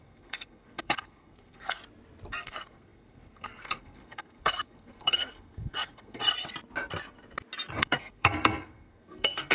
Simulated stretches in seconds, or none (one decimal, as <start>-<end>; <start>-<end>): 0.0-1.8; 2.3-6.2; 7.8-9.5

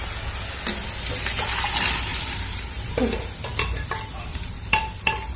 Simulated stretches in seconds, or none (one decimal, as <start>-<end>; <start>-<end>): 2.1-5.4

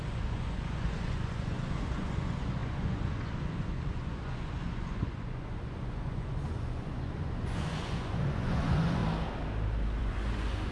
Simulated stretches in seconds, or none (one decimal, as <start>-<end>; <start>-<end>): 0.0-9.0; 10.0-10.7

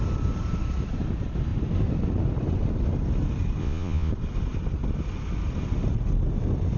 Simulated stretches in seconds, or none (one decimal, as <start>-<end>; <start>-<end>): 3.6-4.1

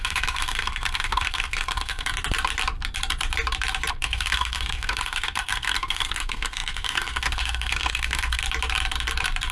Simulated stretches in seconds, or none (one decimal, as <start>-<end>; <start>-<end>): 0.0-2.1; 3.9-8.4

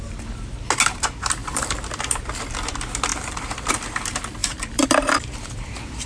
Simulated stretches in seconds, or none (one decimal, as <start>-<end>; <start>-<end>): 1.4-2.2; 3.1-4.0; 4.4-6.1

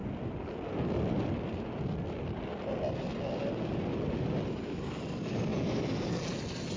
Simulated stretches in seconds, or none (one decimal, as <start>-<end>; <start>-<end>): none

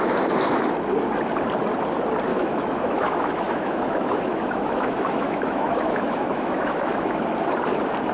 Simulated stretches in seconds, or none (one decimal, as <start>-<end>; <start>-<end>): 2.3-7.2